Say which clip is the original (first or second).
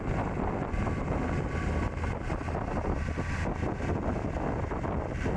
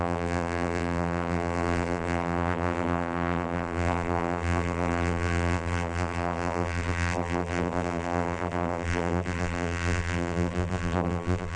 first